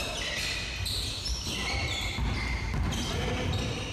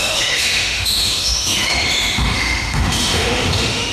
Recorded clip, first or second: first